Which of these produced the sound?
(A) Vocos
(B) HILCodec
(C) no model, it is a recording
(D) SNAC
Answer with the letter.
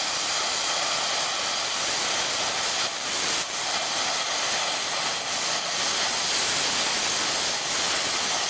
C